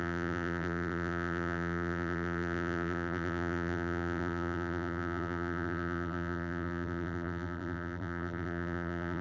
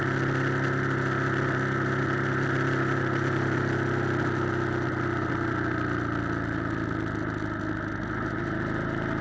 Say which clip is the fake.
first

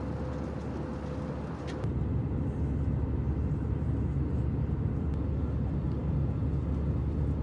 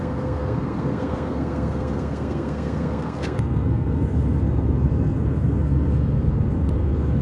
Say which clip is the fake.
second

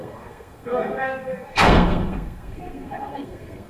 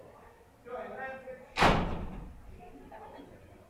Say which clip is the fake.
first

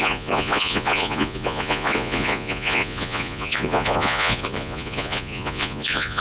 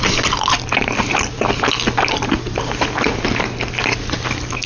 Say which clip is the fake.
first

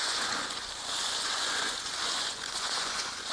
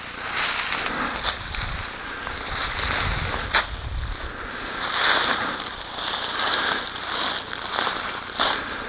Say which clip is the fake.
first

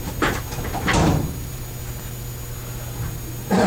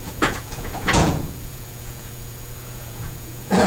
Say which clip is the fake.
second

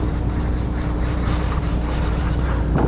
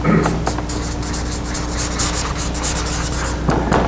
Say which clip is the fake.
first